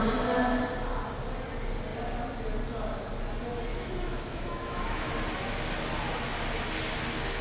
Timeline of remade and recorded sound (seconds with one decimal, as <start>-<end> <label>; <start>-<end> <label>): 0.0-3.7 recorded; 3.7-5.1 remade; 5.1-7.4 recorded